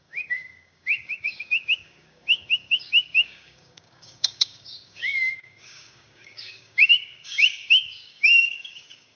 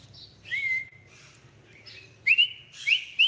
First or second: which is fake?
first